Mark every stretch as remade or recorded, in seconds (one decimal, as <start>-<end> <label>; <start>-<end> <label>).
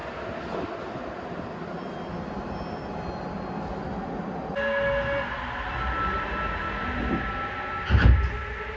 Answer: 0.0-8.8 recorded